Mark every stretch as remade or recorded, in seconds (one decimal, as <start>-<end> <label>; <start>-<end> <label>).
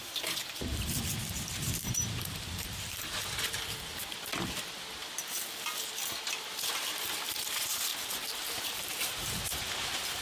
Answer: 0.0-0.4 remade; 0.4-1.1 recorded; 1.1-3.9 remade; 3.9-6.7 recorded; 6.7-7.9 remade; 7.9-8.4 recorded; 8.4-10.2 remade